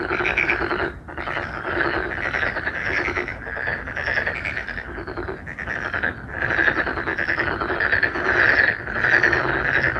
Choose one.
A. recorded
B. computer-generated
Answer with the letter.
A